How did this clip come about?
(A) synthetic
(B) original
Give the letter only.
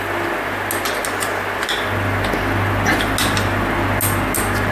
B